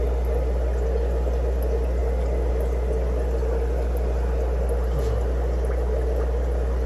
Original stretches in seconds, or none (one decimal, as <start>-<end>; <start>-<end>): 0.0-6.9